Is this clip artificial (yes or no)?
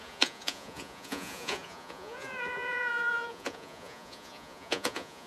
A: yes